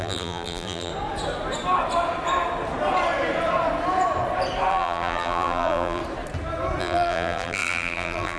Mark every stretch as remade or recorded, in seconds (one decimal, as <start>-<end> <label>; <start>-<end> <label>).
0.0-0.9 remade; 0.9-4.7 recorded; 4.7-6.0 remade; 6.0-6.8 recorded; 6.8-8.4 remade